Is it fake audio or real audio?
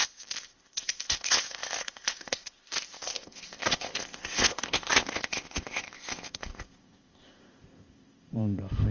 fake